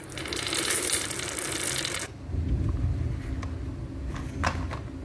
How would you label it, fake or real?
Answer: real